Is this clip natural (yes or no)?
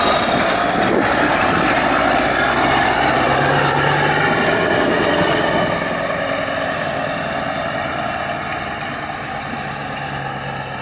yes